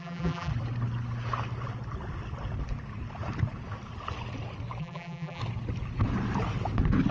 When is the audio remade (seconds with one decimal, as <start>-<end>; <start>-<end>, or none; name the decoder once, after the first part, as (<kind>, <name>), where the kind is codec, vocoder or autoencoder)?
0.0-0.5 (vocoder, BigVGAN v2); 4.8-5.4

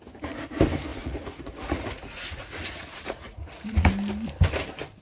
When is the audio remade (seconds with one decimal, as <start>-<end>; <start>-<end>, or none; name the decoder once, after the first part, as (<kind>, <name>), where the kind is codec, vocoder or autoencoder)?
0.9-3.9 (vocoder, Vocos)

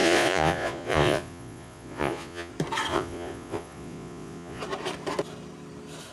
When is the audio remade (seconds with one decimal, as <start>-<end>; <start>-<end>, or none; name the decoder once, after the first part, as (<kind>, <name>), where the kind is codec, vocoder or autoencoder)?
0.0-2.5 (vocoder, Vocos); 2.9-4.6

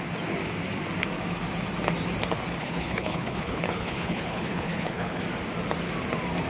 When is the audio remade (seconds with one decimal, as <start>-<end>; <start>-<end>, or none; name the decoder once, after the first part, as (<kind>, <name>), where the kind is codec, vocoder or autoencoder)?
2.6-5.2 (codec, HILCodec)

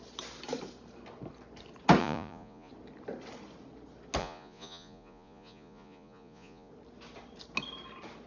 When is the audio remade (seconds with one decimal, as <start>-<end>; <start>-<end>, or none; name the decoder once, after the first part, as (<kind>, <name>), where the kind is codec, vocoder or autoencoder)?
2.0-2.7 (vocoder, Vocos); 4.2-6.7

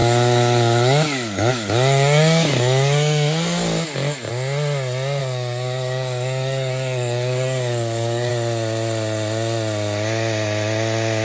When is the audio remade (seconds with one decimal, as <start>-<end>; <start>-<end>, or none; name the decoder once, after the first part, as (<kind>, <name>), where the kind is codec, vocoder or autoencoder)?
0.0-4.3 (codec, DAC); 5.2-8.3